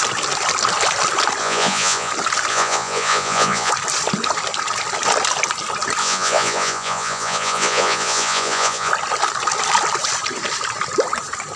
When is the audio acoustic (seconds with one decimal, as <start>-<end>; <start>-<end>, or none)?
0.0-1.4; 2.1-2.5; 3.7-6.0; 8.9-11.6